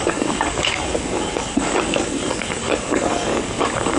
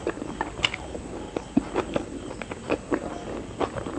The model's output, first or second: first